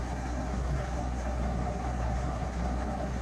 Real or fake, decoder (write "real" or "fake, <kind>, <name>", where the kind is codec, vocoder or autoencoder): fake, codec, SNAC